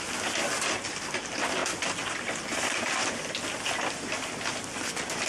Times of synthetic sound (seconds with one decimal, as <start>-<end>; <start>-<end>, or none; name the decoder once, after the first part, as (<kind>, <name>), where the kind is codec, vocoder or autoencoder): none